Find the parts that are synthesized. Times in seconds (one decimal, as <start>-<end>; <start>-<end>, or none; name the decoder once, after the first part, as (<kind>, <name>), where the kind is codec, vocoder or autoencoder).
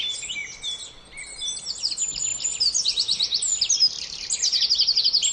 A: none